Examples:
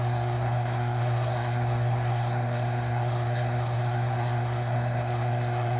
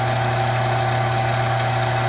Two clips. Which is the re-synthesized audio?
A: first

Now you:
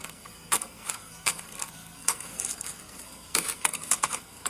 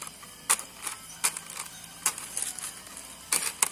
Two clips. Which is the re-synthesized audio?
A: first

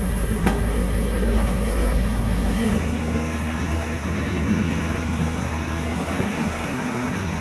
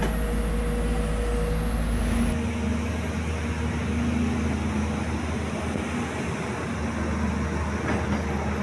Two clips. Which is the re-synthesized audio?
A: first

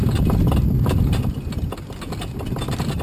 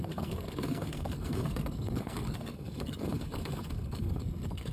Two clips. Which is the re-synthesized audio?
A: second